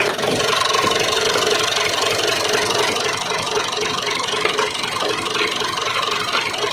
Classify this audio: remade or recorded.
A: recorded